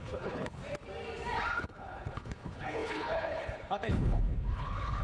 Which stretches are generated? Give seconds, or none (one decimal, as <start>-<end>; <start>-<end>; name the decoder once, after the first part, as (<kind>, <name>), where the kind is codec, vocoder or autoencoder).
0.0-0.6 (codec, HILCodec); 1.6-5.0

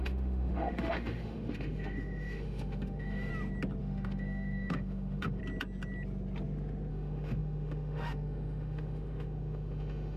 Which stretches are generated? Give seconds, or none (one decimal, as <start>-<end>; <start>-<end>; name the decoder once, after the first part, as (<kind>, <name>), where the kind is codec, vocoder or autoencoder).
0.0-3.3 (autoencoder, DAC-VAE); 3.8-5.4; 6.9-10.2

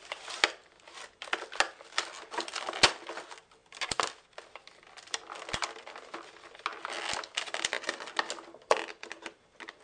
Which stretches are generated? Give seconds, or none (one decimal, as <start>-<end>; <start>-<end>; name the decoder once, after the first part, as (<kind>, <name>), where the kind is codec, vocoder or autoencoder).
none

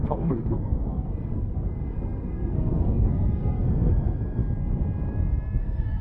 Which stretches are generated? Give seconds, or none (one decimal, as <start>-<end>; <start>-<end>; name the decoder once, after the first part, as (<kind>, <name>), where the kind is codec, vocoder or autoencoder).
0.0-4.4 (codec, SNAC); 5.6-6.0